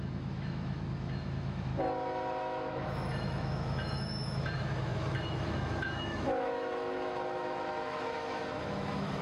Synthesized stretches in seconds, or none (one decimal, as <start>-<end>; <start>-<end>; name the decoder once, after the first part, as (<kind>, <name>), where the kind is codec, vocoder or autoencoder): 0.0-1.7 (autoencoder, DAC-VAE); 2.4-9.2